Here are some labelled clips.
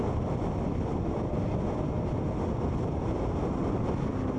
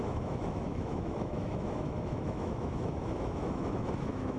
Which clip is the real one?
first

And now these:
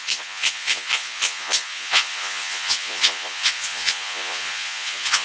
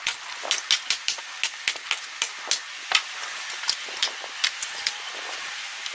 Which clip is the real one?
second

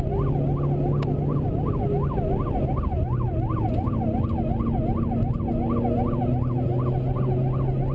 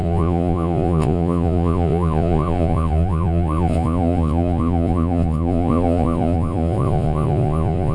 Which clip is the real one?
first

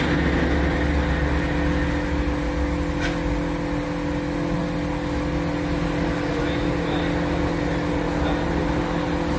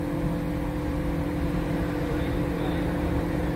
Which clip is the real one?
first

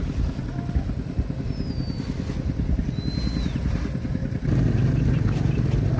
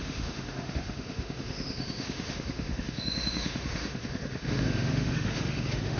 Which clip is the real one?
first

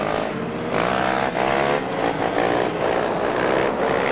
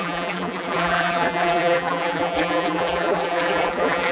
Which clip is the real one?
first